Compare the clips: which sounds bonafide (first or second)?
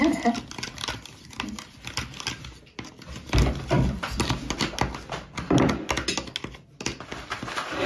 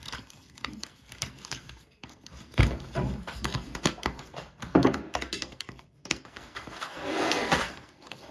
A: first